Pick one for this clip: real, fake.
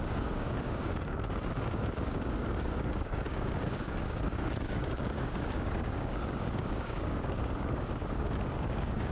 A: fake